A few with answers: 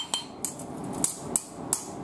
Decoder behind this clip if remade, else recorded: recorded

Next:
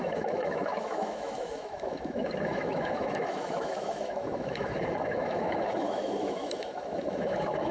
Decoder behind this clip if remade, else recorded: remade, autoencoder, DAC-VAE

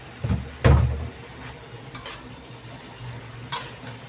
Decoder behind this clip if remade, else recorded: recorded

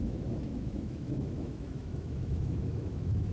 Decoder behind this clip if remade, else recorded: remade, autoencoder, DAC-VAE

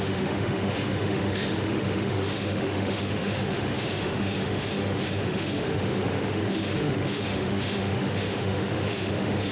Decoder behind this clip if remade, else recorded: remade, autoencoder, DAC-VAE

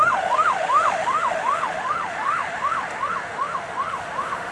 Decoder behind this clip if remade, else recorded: remade, autoencoder, DAC-VAE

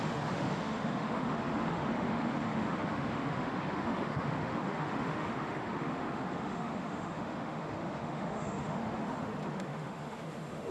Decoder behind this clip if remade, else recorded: remade, autoencoder, DAC-VAE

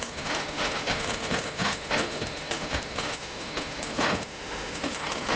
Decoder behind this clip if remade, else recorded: remade, autoencoder, DAC-VAE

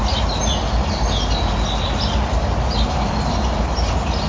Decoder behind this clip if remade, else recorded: recorded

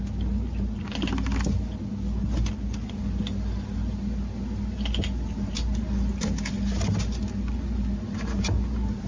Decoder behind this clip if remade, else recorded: recorded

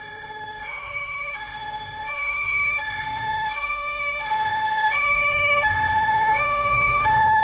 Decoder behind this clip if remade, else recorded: remade, autoencoder, DAC-VAE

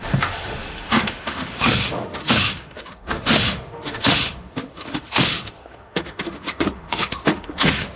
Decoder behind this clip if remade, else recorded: remade, autoencoder, DAC-VAE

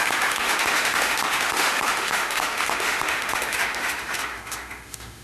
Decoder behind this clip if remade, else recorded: remade, autoencoder, DAC-VAE